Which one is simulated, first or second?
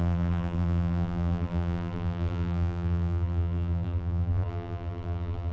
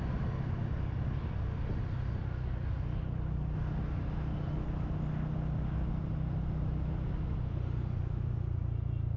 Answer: first